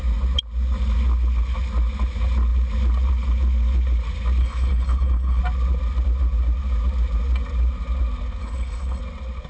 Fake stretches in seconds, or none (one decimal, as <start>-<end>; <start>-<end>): 4.4-5.4; 8.4-9.0